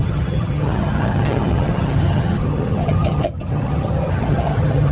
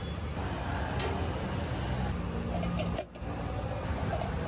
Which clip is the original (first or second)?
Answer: second